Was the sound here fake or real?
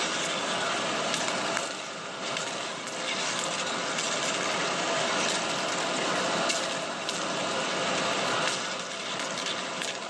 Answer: real